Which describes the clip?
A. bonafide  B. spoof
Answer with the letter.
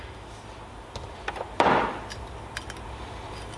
A